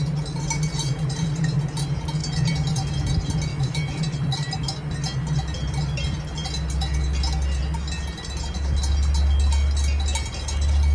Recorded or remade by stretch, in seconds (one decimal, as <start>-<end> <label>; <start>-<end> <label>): 0.0-3.5 recorded; 3.5-4.0 remade; 4.0-10.9 recorded